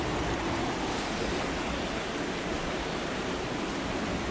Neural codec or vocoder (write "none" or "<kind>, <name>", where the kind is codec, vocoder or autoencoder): none